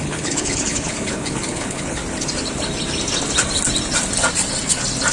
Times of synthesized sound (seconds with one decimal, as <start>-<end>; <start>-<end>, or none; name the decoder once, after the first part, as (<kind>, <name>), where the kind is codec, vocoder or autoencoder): 0.0-2.0 (codec, HILCodec)